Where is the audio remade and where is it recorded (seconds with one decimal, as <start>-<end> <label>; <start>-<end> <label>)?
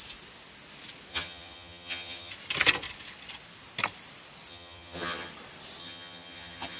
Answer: 0.0-1.1 recorded; 1.1-2.3 remade; 2.3-4.5 recorded; 4.5-5.3 remade; 5.3-5.8 recorded; 5.8-6.8 remade